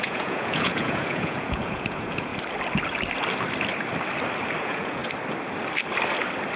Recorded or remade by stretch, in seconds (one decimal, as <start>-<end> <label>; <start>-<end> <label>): 0.0-2.3 remade; 2.3-4.6 recorded; 4.6-5.0 remade; 5.0-6.6 recorded